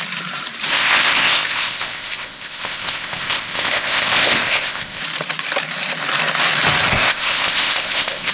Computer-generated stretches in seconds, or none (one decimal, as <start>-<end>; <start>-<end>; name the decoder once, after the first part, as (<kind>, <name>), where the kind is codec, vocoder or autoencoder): 0.7-5.0 (codec, ZipCodec); 6.9-8.3